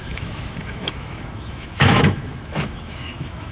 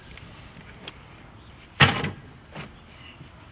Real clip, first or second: second